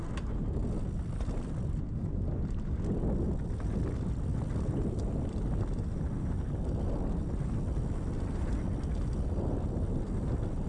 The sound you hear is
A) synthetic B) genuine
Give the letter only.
B